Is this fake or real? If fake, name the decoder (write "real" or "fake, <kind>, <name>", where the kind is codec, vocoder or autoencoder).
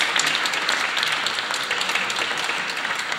real